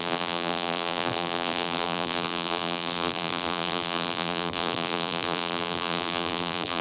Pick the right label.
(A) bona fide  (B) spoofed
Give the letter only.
B